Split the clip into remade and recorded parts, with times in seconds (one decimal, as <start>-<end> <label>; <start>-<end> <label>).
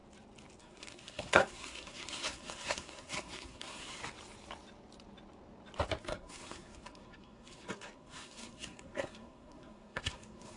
0.0-0.6 recorded; 0.6-4.0 remade; 4.0-6.0 recorded; 6.0-10.6 remade